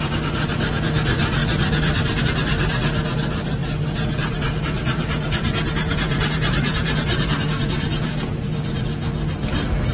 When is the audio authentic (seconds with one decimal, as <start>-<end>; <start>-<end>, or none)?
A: 0.0-3.6; 8.8-9.9